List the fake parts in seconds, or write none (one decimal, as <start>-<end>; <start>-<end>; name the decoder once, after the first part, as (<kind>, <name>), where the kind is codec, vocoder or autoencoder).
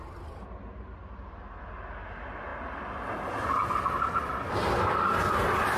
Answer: none